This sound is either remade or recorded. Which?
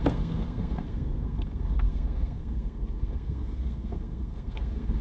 remade